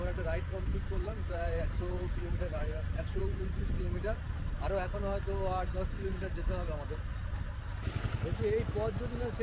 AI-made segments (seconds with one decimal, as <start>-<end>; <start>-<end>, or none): 0.7-3.2